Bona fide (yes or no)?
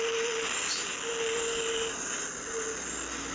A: yes